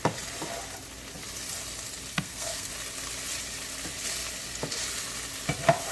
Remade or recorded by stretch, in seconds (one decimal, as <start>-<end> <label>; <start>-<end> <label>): 0.0-2.1 recorded; 2.1-2.7 remade; 2.7-5.9 recorded